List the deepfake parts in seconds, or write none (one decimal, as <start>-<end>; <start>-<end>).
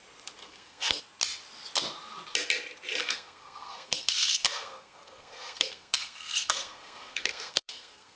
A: 0.4-1.0; 3.0-8.2